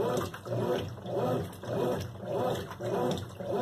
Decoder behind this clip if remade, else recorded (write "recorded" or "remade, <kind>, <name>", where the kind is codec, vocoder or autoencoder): recorded